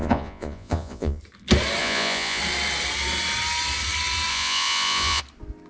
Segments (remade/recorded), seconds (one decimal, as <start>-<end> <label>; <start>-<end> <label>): 0.0-1.2 remade; 1.2-1.8 recorded; 1.8-2.4 remade; 2.4-4.3 recorded; 4.3-5.2 remade; 5.2-5.7 recorded